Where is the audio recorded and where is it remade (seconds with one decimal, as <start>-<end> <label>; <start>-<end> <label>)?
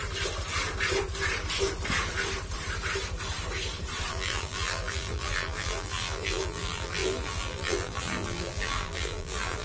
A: 0.0-4.1 recorded; 4.1-9.6 remade